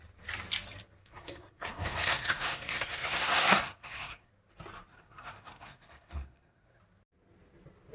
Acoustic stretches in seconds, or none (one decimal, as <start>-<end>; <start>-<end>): 0.0-1.0; 4.3-4.9; 6.8-7.9